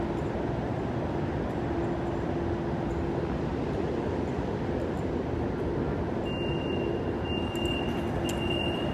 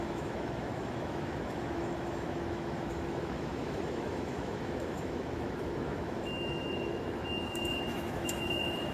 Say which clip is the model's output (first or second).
second